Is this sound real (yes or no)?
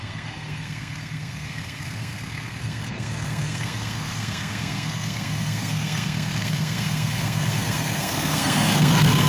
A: no